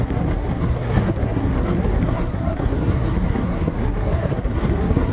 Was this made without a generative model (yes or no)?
no